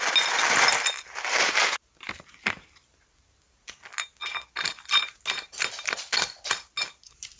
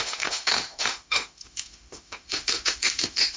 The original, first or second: first